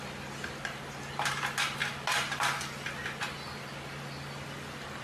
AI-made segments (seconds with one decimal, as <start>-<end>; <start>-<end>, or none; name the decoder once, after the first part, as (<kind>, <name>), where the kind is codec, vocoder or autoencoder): none